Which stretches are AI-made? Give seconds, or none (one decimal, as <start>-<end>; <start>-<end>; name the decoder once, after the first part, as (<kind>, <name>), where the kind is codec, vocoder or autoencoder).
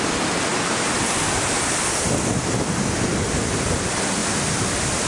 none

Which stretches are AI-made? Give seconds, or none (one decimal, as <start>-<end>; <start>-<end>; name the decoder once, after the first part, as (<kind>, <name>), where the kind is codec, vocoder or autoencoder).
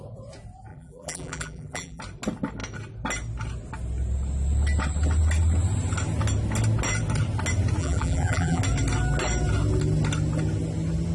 0.7-2.0 (vocoder, BigVGAN v2); 7.8-8.6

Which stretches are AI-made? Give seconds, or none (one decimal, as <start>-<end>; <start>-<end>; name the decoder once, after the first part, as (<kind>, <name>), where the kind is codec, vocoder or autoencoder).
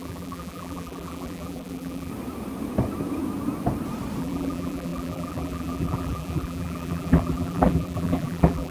0.0-2.1 (vocoder, BigVGAN v2); 4.2-8.7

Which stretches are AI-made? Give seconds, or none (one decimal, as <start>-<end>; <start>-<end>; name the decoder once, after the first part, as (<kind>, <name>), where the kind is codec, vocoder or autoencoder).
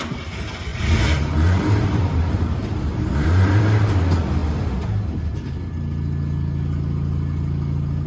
0.7-3.6 (vocoder, BigVGAN v2)